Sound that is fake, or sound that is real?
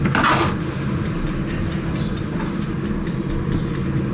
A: real